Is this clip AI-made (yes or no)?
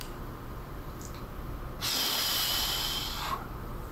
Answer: yes